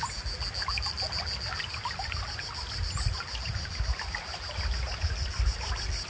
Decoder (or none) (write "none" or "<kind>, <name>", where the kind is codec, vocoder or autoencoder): none